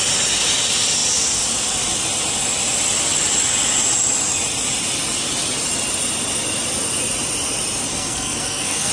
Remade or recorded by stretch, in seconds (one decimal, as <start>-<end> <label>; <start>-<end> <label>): 0.0-7.9 recorded; 7.9-8.9 remade